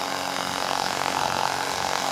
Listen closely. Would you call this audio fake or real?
fake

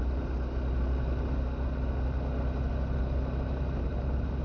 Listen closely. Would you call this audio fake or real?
real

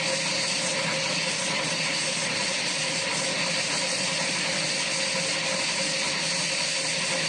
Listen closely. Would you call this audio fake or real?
real